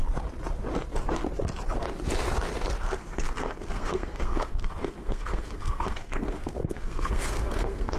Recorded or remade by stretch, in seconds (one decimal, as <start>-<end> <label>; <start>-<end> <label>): 0.0-2.8 recorded; 2.8-8.0 remade